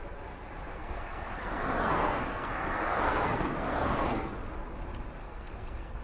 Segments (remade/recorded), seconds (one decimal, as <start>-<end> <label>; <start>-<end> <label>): 0.0-0.7 recorded; 0.7-4.3 remade; 4.3-5.2 recorded; 5.2-6.0 remade